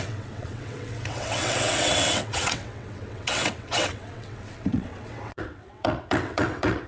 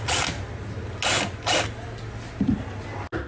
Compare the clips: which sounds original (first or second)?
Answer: second